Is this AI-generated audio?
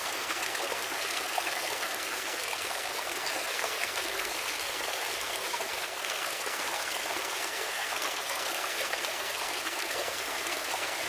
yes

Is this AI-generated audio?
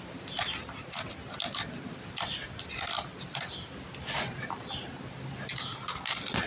no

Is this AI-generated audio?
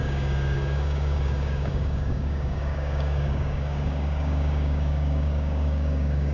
yes